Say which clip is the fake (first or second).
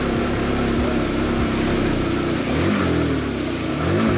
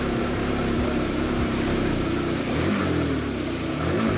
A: second